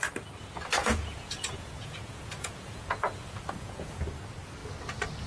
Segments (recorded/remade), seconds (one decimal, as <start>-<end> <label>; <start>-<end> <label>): 0.0-0.8 recorded; 0.8-4.0 remade; 4.0-5.3 recorded